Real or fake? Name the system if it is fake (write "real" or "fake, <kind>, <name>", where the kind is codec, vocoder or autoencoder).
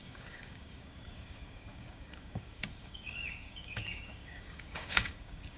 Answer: fake, codec, DAC